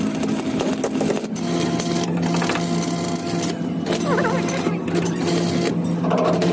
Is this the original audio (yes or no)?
yes